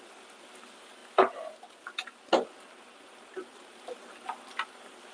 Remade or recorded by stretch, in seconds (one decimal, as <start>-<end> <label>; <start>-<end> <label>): 0.0-5.1 recorded